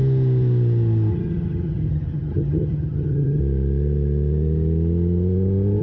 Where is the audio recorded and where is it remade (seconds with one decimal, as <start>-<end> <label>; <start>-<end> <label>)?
0.0-1.1 recorded; 1.1-3.4 remade; 3.4-5.8 recorded